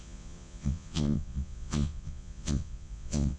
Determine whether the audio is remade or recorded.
remade